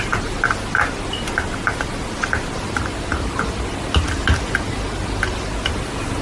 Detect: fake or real real